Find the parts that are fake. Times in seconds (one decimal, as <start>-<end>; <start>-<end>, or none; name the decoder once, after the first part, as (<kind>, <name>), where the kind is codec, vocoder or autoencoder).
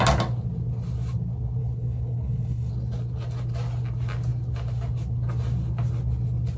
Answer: 1.6-2.7 (codec, HILCodec)